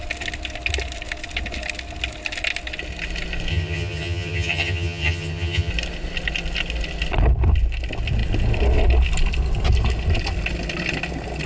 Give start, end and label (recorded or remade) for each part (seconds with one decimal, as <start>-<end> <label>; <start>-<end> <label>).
0.0-3.5 recorded; 3.5-5.7 remade; 5.7-11.5 recorded